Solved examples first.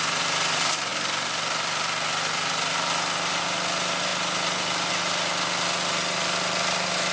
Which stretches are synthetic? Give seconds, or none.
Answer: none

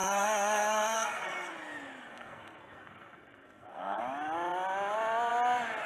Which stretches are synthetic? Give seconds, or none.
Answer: 0.0-1.5 (codec, SNAC); 2.1-4.0

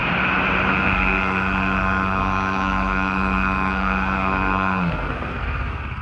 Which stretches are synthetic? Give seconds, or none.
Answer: 0.7-6.0 (codec, SNAC)